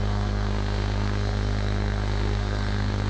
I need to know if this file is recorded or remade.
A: remade